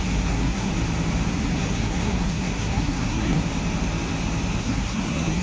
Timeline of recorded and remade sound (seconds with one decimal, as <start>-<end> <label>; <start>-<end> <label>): 0.0-0.7 remade; 0.7-1.3 recorded; 1.3-3.4 remade; 3.4-4.6 recorded; 4.6-5.4 remade